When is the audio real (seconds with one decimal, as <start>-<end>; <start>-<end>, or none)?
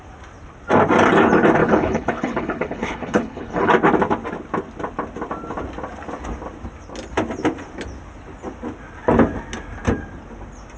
0.0-1.6; 3.7-10.8